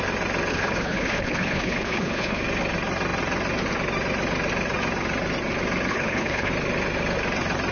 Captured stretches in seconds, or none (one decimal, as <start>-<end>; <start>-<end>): 0.0-0.5; 2.4-5.9; 6.5-7.7